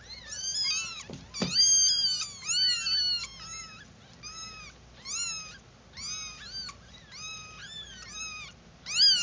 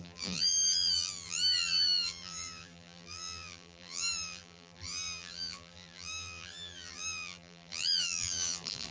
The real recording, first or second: first